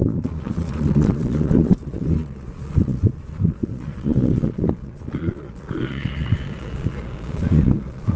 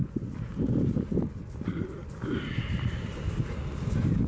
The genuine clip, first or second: second